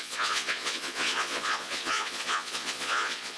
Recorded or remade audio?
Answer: remade